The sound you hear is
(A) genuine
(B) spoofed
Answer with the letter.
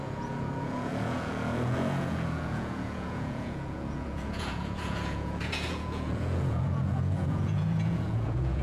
B